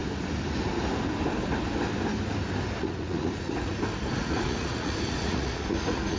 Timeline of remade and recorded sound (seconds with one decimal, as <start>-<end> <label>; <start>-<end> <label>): 0.0-2.8 recorded; 2.8-3.7 remade; 3.7-4.2 recorded; 4.2-6.2 remade